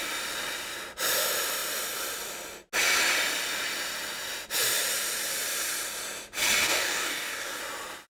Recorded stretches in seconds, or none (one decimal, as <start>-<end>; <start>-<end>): 0.0-6.6; 7.6-8.1